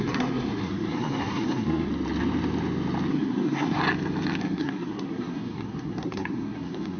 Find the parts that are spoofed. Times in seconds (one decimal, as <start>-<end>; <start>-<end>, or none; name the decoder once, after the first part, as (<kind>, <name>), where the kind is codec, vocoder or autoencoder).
0.0-1.9 (codec, SNAC); 3.1-3.8; 4.4-7.0